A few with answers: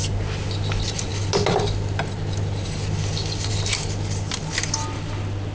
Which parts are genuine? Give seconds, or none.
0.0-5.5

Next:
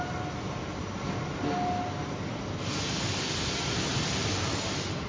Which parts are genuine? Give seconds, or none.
0.0-5.1

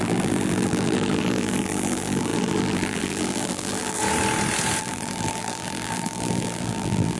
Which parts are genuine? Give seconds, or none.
4.0-4.8

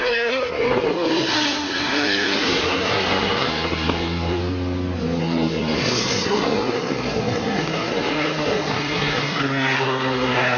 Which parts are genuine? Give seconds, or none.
4.4-5.2

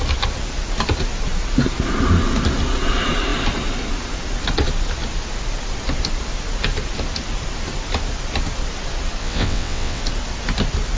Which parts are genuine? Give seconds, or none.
0.0-9.2; 10.0-11.0

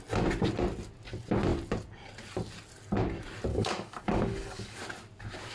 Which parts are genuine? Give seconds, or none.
0.0-3.5; 4.8-5.5